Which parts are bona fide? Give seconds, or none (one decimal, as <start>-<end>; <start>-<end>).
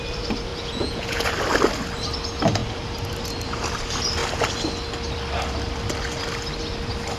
0.0-0.5; 1.3-7.2